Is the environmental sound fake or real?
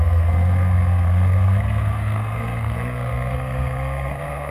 fake